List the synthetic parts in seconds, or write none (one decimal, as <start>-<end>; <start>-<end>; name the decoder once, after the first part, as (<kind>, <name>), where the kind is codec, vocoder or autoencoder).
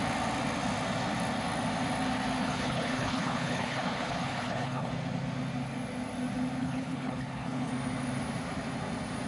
2.4-4.9 (codec, HILCodec); 6.6-7.7